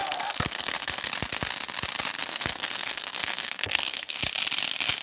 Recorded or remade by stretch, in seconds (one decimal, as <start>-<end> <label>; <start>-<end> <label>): 0.0-1.1 remade; 1.1-2.2 recorded; 2.2-4.2 remade; 4.2-5.0 recorded